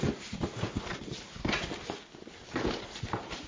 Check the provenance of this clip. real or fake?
real